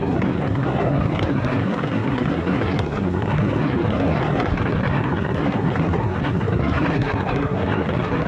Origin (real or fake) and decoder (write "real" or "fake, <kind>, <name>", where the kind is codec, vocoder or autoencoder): fake, codec, SNAC